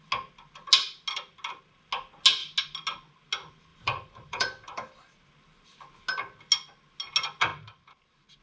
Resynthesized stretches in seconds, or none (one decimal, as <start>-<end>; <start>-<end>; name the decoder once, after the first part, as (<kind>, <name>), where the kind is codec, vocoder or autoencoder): 3.7-5.0 (vocoder, BigVGAN v2)